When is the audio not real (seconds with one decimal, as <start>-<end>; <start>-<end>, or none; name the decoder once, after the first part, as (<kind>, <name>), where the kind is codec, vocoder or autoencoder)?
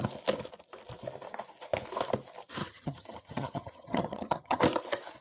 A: 2.6-4.6 (vocoder, HiFi-GAN)